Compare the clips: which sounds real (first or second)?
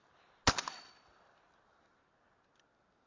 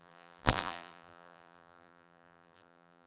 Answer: first